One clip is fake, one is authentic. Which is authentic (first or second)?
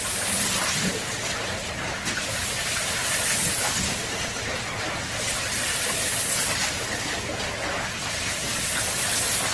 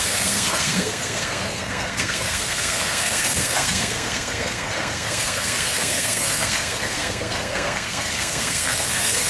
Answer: first